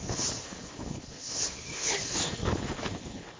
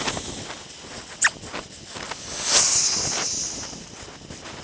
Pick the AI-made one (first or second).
first